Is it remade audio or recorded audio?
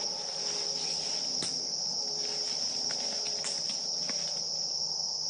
recorded